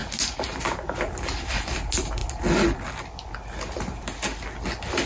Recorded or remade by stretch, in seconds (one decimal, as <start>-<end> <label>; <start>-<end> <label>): 0.0-5.1 recorded